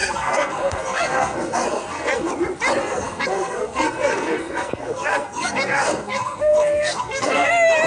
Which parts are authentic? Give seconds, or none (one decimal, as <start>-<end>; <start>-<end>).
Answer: 2.3-2.8; 7.5-7.9